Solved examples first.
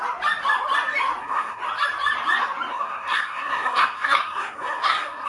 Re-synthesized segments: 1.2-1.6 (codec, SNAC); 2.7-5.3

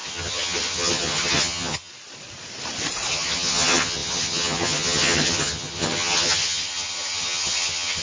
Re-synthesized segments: 0.0-1.9 (vocoder, HiFi-GAN); 3.1-8.0

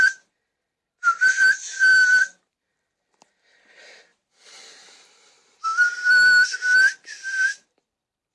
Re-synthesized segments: 0.0-8.3 (vocoder, BigVGAN v2)